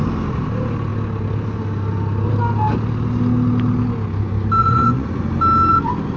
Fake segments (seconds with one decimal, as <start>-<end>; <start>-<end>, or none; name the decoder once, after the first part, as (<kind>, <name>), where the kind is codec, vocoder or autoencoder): 4.6-5.2 (vocoder, Vocos)